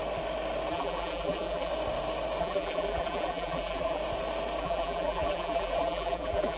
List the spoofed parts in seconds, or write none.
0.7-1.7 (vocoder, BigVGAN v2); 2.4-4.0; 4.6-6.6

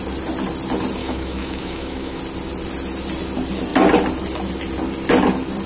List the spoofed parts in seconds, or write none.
1.0-2.2 (autoencoder, DAC-VAE)

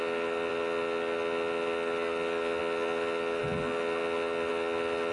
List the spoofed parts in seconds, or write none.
none

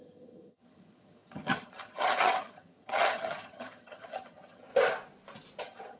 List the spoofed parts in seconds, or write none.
0.0-4.7 (vocoder, HiFi-GAN); 5.6-6.0

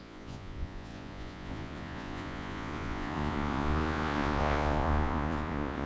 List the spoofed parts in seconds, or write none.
0.0-5.9 (vocoder, Vocos)